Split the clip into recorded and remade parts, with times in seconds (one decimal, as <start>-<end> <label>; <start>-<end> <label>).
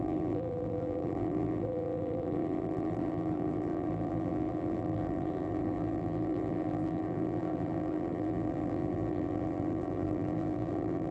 0.0-11.1 remade